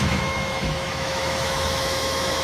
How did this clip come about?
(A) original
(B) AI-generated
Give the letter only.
B